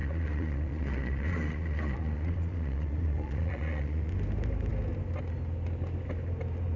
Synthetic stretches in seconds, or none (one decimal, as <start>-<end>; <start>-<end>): 0.0-4.1